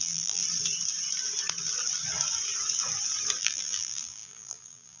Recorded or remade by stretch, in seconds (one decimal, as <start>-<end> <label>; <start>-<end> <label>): 0.0-0.4 remade; 0.4-3.4 recorded; 3.4-5.0 remade